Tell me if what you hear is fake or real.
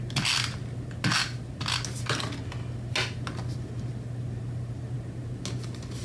real